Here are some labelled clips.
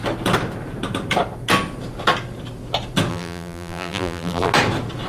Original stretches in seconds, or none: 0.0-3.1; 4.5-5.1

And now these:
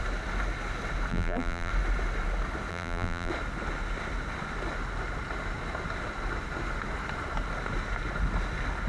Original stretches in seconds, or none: 0.0-1.1; 1.7-2.7; 3.3-8.9

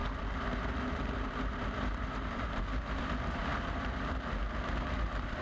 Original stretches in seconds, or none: none

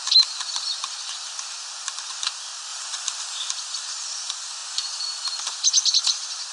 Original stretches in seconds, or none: 2.7-3.5; 4.6-5.4

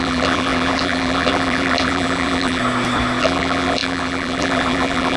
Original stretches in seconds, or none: 2.6-3.2

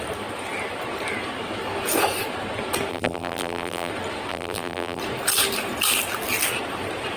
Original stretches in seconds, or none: 0.0-2.9; 3.9-4.3; 5.0-7.2

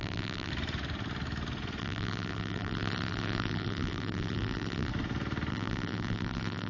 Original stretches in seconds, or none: 0.5-1.8; 4.9-5.5